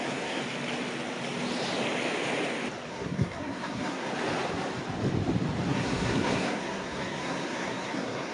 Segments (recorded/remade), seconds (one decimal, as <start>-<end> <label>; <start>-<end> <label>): 0.0-0.4 remade; 0.4-2.9 recorded; 2.9-4.1 remade; 4.1-5.7 recorded; 5.7-8.3 remade